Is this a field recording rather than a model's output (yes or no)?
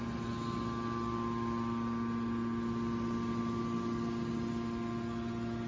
yes